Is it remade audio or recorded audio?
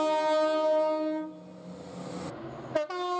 recorded